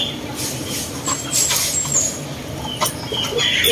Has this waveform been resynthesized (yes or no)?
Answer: no